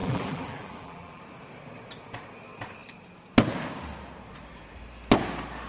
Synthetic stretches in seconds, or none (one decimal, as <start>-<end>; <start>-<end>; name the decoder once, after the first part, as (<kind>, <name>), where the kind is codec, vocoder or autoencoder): 0.0-1.2 (vocoder, BigVGAN v2)